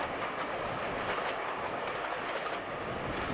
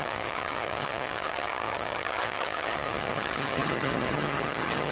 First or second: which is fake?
second